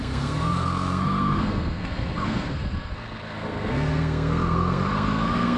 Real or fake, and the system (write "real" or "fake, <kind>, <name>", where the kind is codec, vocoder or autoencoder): fake, codec, SNAC